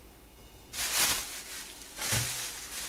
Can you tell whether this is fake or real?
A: real